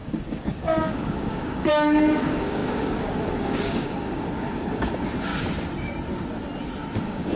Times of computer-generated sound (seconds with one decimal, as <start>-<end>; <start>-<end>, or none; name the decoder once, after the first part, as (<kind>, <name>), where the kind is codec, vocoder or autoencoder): 0.0-5.3 (codec, DAC); 7.0-7.4